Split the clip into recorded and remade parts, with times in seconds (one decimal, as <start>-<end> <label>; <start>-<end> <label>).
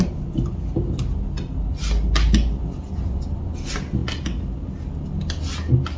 0.0-6.0 recorded